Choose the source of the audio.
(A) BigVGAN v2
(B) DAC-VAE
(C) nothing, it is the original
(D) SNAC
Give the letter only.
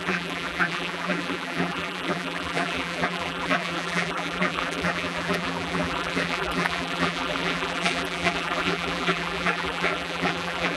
A